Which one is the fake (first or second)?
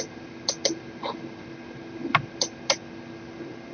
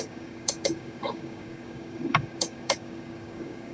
second